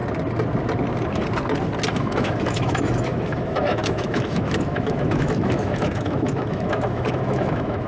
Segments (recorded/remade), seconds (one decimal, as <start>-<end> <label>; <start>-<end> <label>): 0.0-1.9 recorded; 1.9-7.9 remade